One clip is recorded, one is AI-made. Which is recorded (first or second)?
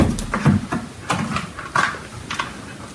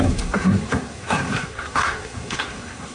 first